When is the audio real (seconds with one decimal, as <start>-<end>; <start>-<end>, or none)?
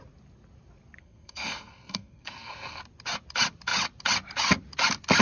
0.0-1.0; 2.8-5.2